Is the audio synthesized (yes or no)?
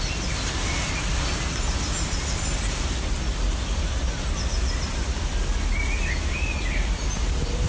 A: no